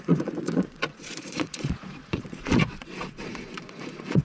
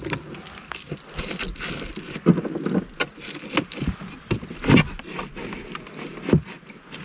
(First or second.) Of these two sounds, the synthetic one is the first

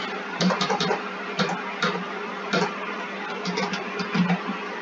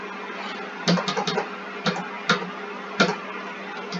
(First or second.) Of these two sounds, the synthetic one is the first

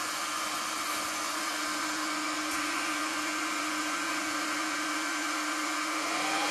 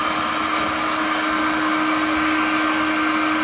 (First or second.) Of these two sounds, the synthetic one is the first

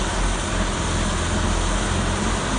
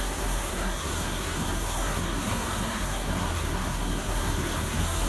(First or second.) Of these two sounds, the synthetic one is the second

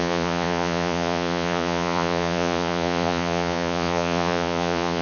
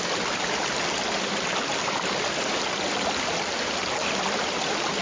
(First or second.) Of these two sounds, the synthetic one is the first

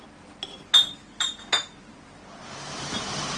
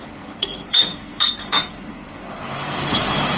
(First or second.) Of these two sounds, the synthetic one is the second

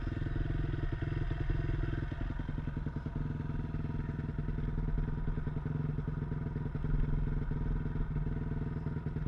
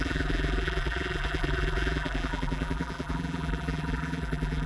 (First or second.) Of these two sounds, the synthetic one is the second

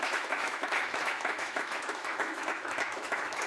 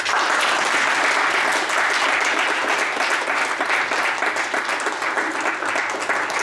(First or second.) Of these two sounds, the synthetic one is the first